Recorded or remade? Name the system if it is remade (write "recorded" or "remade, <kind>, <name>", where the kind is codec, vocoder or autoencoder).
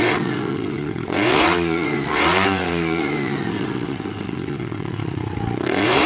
remade, vocoder, WaveNeXt